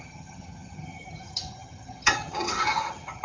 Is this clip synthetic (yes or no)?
yes